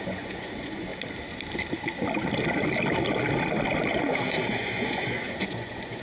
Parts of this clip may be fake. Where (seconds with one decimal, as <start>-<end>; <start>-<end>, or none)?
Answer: 0.0-0.9; 4.5-6.0